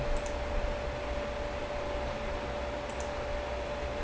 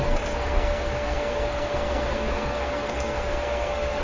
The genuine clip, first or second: first